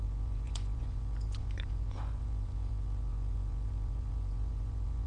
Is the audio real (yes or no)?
no